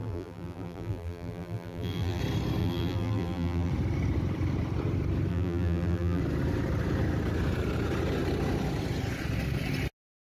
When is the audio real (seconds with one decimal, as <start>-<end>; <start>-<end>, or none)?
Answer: 2.2-2.6; 3.7-5.3; 6.2-10.3